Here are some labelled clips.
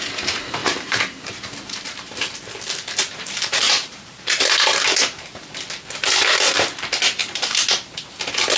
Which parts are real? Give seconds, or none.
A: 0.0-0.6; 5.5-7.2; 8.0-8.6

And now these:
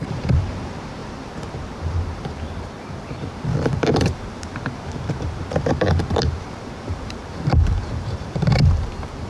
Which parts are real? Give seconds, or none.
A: none

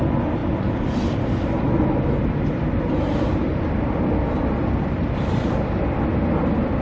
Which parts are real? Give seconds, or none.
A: 0.0-6.8

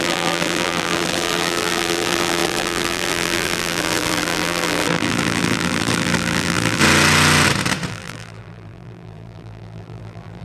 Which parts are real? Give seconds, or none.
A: 6.8-7.9

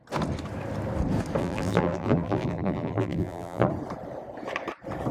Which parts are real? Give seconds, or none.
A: 0.0-1.4; 3.7-5.1

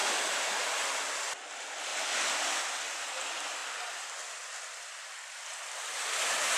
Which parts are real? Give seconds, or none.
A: 0.7-6.6